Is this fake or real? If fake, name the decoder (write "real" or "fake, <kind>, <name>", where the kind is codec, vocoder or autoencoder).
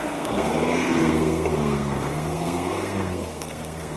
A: fake, codec, SNAC